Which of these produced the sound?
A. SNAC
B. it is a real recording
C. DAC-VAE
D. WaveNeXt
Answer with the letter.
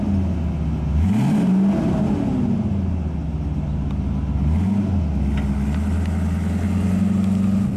B